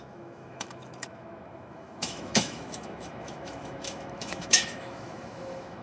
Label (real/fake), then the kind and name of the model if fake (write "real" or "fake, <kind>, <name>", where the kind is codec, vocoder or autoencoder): fake, autoencoder, DAC-VAE